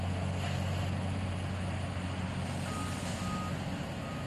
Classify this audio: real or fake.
real